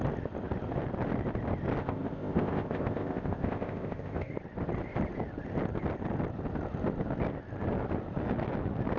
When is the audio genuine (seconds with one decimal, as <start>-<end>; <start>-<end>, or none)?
0.0-1.8; 4.3-9.0